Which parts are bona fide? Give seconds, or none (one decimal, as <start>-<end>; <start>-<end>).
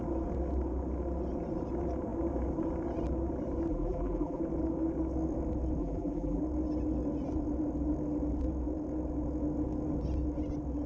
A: 0.0-3.7; 4.4-5.8; 6.4-10.9